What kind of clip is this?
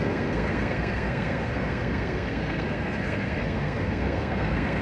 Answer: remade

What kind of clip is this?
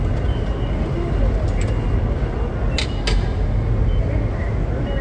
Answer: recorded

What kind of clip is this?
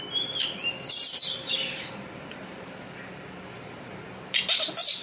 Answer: recorded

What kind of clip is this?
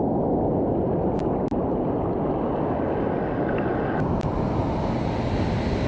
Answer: recorded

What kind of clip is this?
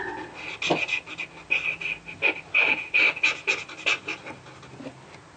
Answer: recorded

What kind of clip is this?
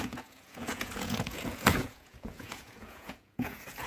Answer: remade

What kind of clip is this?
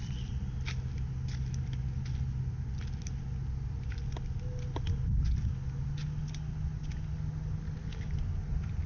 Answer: recorded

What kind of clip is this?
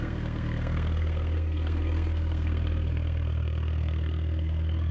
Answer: remade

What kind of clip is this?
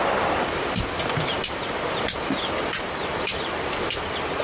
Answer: recorded